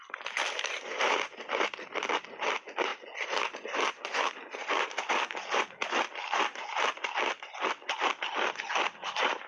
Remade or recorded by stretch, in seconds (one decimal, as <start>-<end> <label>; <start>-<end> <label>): 0.0-9.5 recorded